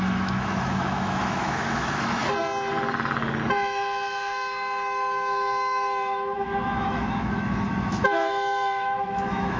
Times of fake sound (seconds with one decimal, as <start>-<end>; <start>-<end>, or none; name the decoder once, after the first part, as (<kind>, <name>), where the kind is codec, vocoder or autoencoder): 0.0-2.2 (autoencoder, DAC-VAE); 3.5-9.6